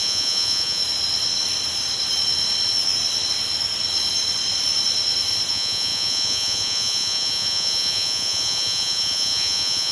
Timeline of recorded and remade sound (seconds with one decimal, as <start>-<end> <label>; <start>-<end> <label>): 0.0-0.8 remade; 0.8-5.5 recorded; 5.5-9.9 remade